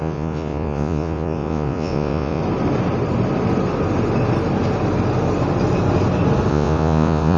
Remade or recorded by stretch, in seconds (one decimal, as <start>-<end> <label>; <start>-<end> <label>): 0.0-2.4 remade; 2.4-6.5 recorded; 6.5-7.4 remade